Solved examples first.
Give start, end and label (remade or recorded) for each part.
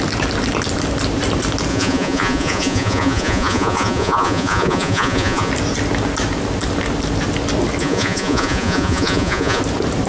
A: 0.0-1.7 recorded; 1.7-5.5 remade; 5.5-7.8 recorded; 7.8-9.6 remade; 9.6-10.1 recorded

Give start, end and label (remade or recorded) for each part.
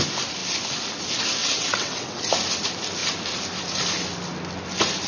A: 0.0-1.4 recorded; 1.4-2.2 remade; 2.2-5.1 recorded